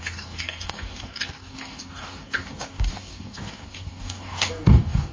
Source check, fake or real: fake